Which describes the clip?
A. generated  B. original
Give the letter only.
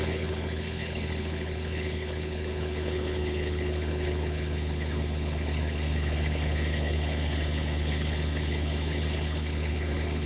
A